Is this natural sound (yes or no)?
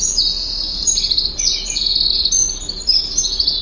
yes